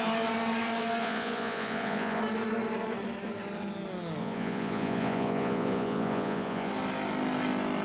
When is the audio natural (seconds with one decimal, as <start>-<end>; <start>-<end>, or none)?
0.0-1.0; 2.2-4.2; 6.7-7.8